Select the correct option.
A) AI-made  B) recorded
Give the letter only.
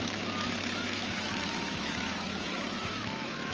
A